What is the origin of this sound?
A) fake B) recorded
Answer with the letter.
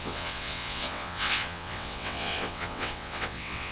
A